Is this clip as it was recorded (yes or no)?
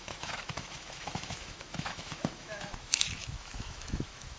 no